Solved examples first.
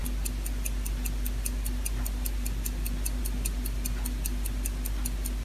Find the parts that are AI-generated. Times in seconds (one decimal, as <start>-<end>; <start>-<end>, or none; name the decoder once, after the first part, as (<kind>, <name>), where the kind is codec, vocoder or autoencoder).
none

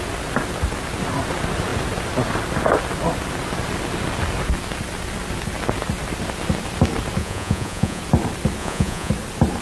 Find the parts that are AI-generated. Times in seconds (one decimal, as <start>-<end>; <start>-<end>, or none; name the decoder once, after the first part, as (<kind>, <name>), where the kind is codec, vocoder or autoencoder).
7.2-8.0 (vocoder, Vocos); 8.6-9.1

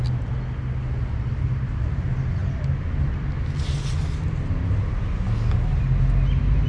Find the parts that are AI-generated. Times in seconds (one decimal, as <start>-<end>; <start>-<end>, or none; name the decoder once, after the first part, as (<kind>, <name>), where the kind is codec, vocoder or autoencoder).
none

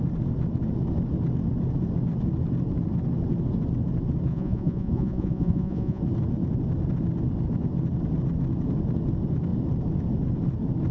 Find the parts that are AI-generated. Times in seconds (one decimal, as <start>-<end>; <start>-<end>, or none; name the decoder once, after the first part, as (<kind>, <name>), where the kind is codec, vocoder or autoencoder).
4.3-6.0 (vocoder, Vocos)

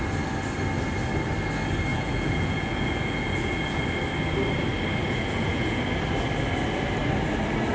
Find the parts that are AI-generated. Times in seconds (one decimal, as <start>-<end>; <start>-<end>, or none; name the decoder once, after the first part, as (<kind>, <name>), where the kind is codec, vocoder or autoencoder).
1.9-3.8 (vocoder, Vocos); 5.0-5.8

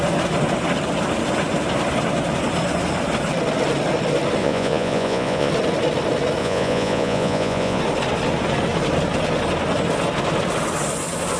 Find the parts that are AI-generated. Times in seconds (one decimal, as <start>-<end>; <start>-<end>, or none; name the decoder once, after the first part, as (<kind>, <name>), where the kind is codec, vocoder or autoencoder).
4.4-5.5 (vocoder, Vocos); 6.4-7.8